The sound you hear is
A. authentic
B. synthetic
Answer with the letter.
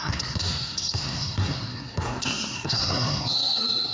B